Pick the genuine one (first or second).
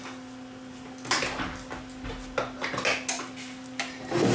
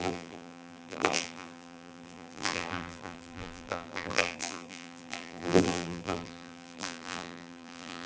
first